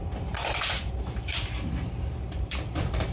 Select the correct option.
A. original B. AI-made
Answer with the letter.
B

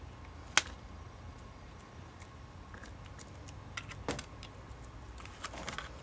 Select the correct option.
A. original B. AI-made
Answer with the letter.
A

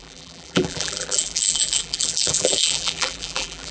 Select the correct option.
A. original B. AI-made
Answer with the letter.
B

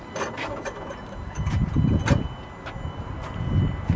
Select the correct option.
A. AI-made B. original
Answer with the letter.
A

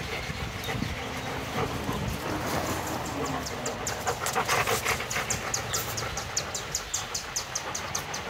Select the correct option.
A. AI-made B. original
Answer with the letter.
B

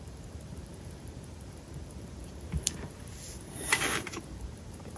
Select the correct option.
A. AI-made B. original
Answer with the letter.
A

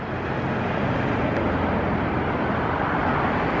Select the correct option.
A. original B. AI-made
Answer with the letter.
A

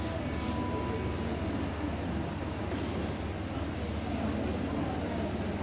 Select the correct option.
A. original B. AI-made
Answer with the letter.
A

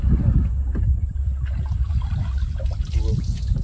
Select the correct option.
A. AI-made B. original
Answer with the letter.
B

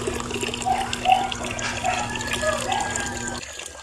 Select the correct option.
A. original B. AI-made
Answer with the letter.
A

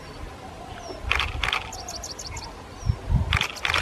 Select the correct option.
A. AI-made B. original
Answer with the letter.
B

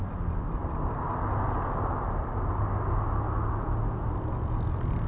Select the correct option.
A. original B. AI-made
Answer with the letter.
A